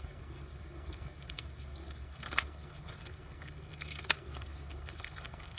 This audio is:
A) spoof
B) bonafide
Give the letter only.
A